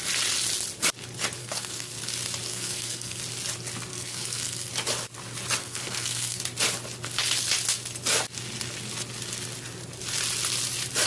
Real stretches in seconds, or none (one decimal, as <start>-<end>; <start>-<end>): 0.0-1.4; 2.0-2.5; 3.2-3.9; 4.7-5.6; 6.4-11.1